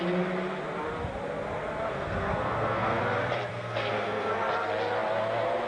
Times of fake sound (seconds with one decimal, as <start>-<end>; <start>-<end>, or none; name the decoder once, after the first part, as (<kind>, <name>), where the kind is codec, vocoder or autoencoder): 1.9-3.0 (codec, SNAC); 3.5-4.3